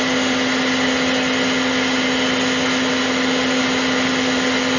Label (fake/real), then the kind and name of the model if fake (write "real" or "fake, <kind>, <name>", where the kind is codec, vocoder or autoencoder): real